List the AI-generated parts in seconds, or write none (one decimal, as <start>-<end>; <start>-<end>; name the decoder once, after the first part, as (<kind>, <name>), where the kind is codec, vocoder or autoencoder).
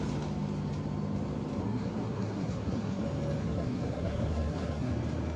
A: 1.6-3.0 (codec, SNAC); 3.4-4.9